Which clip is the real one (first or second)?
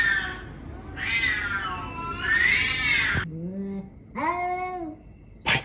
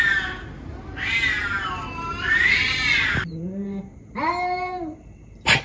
first